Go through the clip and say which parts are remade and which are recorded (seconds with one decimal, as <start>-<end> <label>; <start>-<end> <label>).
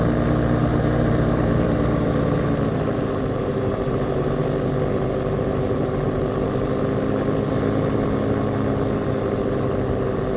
0.0-0.6 recorded; 0.6-4.4 remade; 4.4-10.4 recorded